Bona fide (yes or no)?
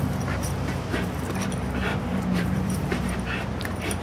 no